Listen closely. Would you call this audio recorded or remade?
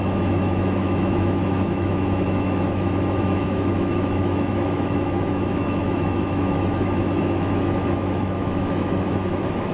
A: remade